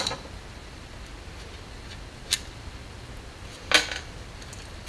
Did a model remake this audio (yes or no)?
no